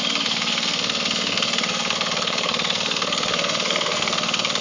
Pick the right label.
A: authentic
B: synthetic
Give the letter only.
B